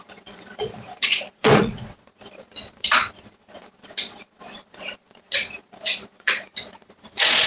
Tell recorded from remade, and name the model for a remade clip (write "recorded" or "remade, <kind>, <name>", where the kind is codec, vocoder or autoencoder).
remade, vocoder, Vocos